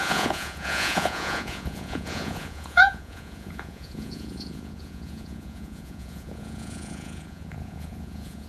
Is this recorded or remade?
remade